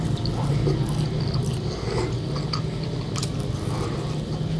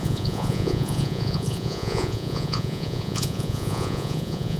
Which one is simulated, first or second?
second